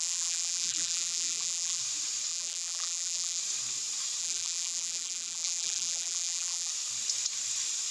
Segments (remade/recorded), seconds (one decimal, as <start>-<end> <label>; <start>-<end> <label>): 0.0-1.8 remade; 1.8-2.3 recorded; 2.3-3.4 remade; 3.4-4.2 recorded; 4.2-6.7 remade; 6.7-7.9 recorded